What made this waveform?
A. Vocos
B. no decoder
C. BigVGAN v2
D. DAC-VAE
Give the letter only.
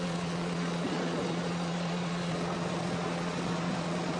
A